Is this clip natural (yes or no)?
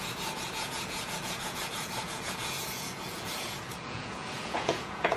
no